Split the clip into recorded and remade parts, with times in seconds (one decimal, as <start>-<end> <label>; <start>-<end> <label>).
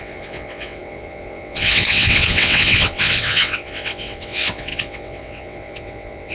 0.0-6.3 remade